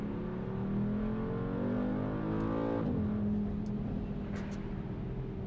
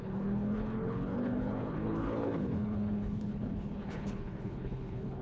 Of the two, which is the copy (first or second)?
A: second